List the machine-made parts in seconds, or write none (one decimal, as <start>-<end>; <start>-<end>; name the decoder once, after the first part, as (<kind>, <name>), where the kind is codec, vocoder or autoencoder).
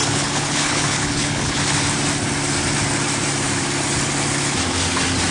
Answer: 0.0-1.6 (codec, HILCodec)